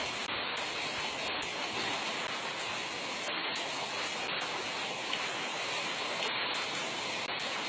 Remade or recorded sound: recorded